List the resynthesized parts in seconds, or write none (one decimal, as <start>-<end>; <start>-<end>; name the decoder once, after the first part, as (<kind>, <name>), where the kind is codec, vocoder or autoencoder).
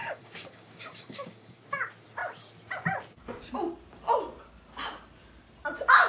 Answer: 0.0-1.6 (codec, DAC)